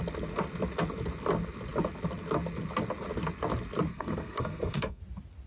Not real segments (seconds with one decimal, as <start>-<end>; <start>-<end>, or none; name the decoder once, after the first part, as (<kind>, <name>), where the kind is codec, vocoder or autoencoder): 3.9-5.0 (codec, SNAC)